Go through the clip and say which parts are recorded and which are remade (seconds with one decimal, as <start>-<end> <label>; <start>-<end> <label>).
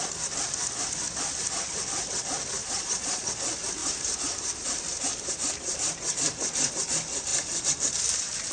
0.0-2.6 recorded; 2.6-3.3 remade; 3.3-8.5 recorded